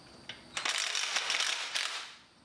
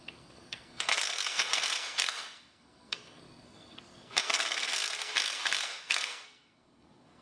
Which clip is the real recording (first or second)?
first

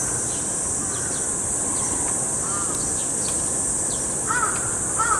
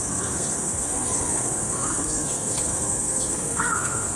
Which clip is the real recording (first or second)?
first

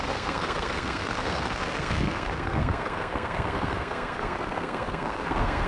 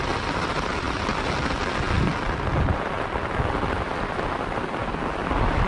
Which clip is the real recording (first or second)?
second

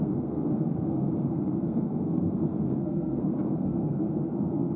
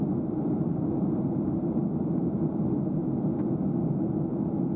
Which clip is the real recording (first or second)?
second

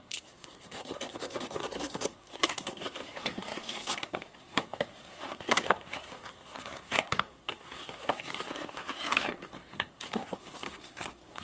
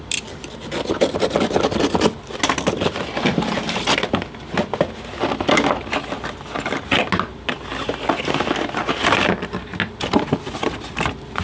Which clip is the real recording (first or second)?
second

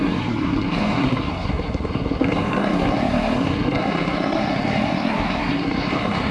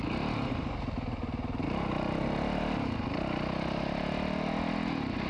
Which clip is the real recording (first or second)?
second